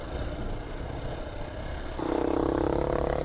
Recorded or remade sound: recorded